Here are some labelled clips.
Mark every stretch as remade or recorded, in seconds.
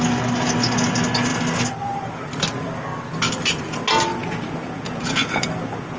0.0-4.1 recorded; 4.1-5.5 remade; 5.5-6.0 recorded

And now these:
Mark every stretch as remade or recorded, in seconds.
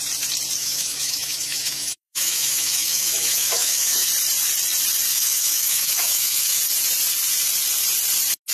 0.0-0.6 recorded; 0.6-4.1 remade; 4.1-5.1 recorded; 5.1-6.6 remade; 6.6-8.5 recorded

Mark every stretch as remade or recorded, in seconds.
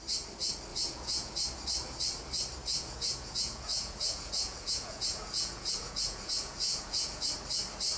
0.0-0.7 recorded; 0.7-1.3 remade; 1.3-2.7 recorded; 2.7-7.3 remade; 7.3-8.0 recorded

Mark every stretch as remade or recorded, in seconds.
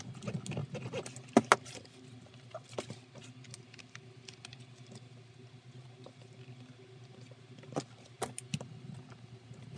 0.0-9.8 recorded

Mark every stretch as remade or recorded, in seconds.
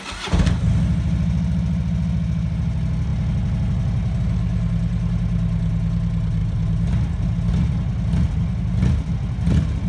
0.0-9.9 recorded